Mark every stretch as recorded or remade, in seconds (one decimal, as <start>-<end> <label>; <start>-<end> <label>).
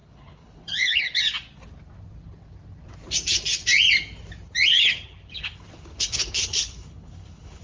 0.0-1.2 remade; 1.2-4.7 recorded; 4.7-7.6 remade